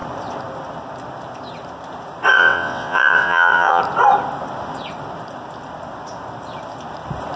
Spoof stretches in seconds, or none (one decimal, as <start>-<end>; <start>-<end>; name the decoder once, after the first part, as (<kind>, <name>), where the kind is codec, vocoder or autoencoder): 2.3-3.8 (vocoder, WaveNeXt)